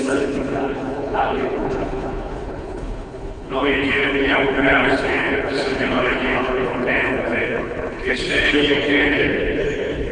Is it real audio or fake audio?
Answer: fake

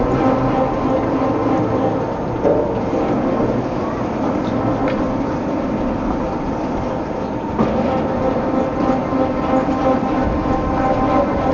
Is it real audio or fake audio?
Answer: real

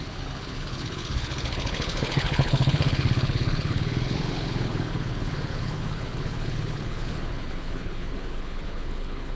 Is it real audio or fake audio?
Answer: fake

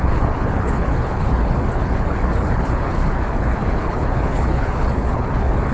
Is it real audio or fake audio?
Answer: fake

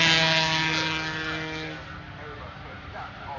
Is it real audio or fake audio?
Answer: real